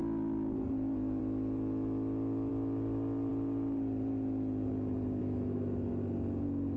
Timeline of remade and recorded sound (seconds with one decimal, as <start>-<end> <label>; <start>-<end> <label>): 0.0-5.2 recorded; 5.2-5.9 remade; 5.9-6.8 recorded